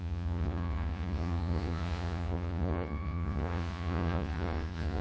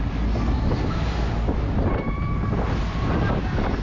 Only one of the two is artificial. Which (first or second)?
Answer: first